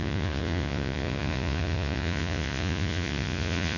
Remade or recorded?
remade